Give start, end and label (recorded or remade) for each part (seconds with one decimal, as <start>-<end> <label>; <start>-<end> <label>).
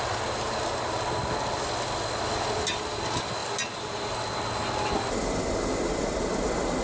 0.0-6.8 recorded